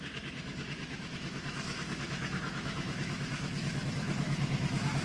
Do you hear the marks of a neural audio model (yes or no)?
yes